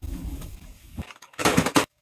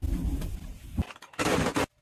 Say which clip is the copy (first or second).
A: first